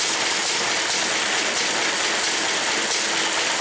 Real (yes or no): yes